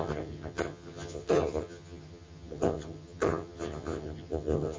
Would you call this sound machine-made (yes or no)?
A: yes